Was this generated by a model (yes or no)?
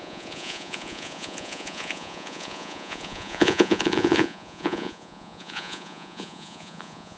yes